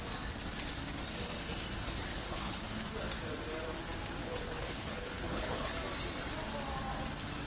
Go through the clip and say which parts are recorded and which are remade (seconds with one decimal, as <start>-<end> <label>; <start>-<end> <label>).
0.0-2.1 recorded; 2.1-2.6 remade; 2.6-4.2 recorded; 4.2-5.7 remade; 5.7-7.5 recorded